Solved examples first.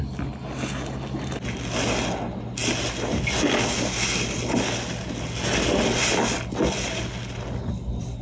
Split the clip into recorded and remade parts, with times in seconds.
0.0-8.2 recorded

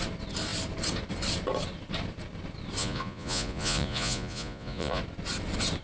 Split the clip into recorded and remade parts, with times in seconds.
0.0-2.8 recorded; 2.8-5.0 remade; 5.0-5.8 recorded

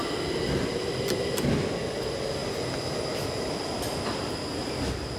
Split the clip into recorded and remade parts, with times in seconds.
0.0-5.2 recorded

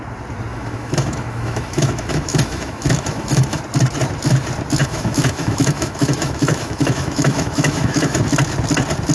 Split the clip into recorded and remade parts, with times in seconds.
0.0-0.5 recorded; 0.5-3.6 remade; 3.6-4.8 recorded; 4.8-8.2 remade; 8.2-9.1 recorded

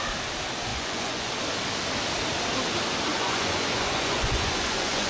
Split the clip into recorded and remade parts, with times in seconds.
0.0-0.7 recorded; 0.7-1.3 remade; 1.3-3.1 recorded; 3.1-5.1 remade

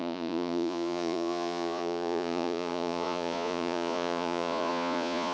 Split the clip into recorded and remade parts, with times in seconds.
0.0-5.3 remade

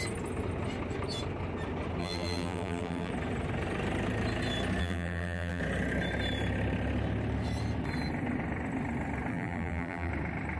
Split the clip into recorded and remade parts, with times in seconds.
0.0-2.0 recorded; 2.0-3.1 remade; 3.1-4.8 recorded; 4.8-5.6 remade; 5.6-9.3 recorded; 9.3-10.1 remade; 10.1-10.6 recorded

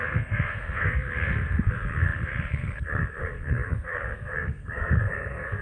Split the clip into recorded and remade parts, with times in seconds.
0.0-5.6 remade